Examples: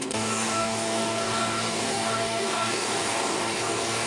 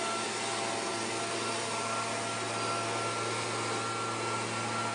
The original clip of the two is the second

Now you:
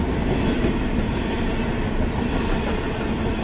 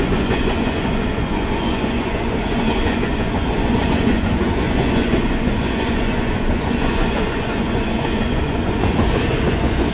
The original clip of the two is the first